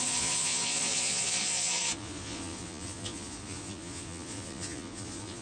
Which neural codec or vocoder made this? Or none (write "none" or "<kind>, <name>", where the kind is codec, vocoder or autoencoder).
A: vocoder, Vocos